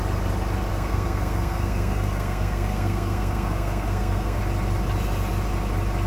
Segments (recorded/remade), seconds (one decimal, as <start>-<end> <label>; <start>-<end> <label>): 0.0-0.7 recorded; 0.7-4.4 remade; 4.4-6.1 recorded